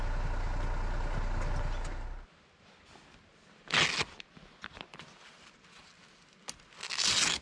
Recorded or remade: recorded